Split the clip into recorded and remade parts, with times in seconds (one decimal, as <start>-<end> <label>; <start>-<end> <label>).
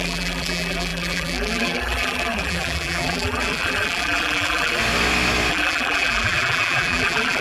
0.0-4.8 remade; 4.8-5.5 recorded; 5.5-7.4 remade